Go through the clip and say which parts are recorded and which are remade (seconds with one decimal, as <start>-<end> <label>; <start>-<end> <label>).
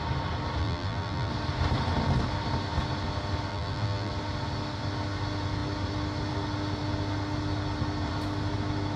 0.0-0.6 recorded; 0.6-1.3 remade; 1.3-3.5 recorded; 3.5-4.1 remade; 4.1-9.0 recorded